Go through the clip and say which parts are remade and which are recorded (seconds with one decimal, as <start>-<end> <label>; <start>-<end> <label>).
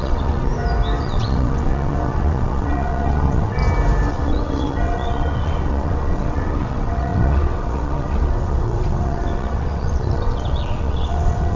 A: 0.0-0.5 remade; 0.5-1.0 recorded; 1.0-3.6 remade; 3.6-4.1 recorded; 4.1-11.6 remade